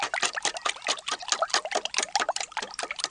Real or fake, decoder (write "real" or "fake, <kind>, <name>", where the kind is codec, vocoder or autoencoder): real